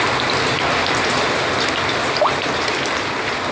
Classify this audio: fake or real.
real